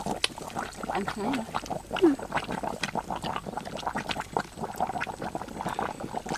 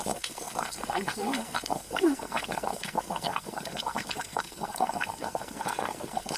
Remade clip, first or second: second